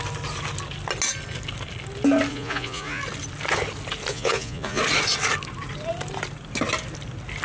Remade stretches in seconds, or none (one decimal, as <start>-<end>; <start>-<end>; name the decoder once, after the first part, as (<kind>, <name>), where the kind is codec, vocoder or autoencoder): 2.3-3.0 (vocoder, Vocos); 4.1-4.8